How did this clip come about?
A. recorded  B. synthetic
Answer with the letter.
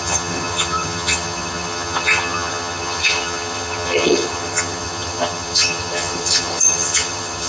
B